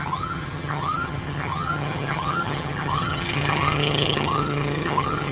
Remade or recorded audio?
remade